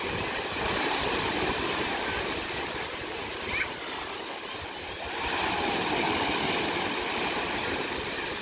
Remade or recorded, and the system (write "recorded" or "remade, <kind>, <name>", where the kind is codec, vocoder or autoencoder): recorded